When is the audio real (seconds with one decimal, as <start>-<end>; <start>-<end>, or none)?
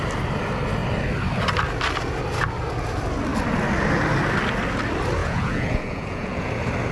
0.0-5.2; 6.5-6.9